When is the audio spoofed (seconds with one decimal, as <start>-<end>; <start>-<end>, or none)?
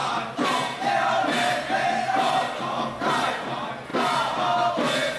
0.0-3.1; 3.9-4.7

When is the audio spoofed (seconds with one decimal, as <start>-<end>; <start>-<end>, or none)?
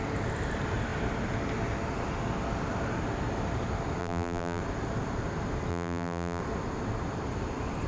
4.0-4.6; 5.7-6.4